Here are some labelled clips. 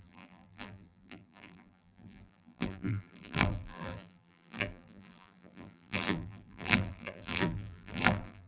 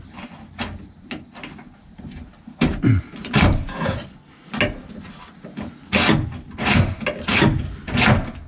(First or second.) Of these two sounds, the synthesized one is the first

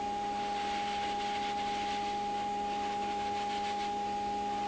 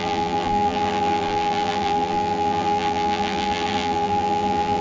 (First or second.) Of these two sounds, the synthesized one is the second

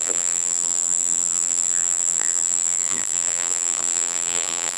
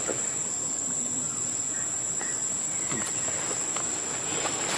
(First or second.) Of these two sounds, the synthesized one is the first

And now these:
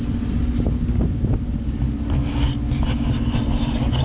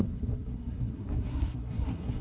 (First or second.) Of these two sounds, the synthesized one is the second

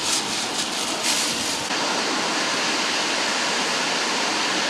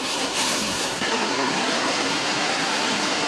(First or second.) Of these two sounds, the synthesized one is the second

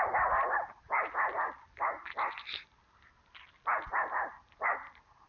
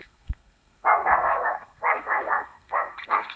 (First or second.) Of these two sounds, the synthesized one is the second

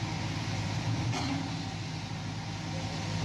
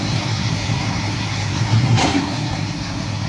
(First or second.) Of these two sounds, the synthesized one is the second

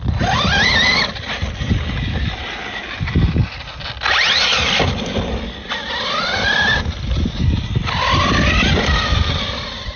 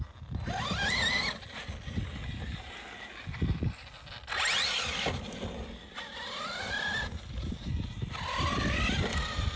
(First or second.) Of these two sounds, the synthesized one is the first